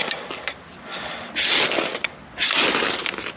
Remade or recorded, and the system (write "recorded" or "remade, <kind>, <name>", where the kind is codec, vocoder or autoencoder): recorded